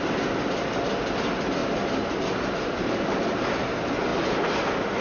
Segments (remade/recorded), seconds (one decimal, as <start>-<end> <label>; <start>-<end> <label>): 0.0-1.6 recorded; 1.6-3.4 remade; 3.4-5.0 recorded